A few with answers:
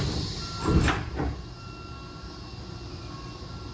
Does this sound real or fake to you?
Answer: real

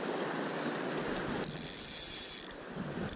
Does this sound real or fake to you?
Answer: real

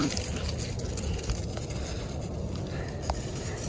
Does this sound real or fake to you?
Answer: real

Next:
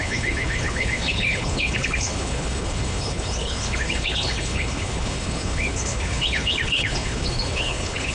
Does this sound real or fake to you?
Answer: fake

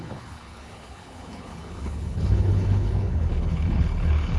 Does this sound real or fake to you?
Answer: fake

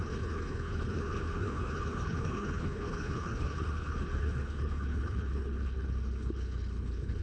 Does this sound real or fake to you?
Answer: fake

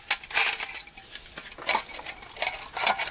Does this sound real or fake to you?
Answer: real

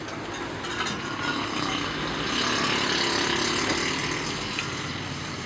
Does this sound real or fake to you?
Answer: real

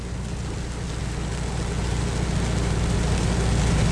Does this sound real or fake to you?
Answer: real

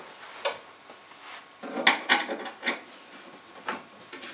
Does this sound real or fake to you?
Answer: real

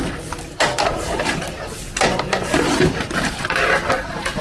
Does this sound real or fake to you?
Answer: real